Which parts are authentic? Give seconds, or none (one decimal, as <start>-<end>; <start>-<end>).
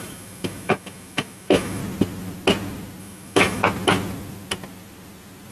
1.8-3.0; 3.6-5.5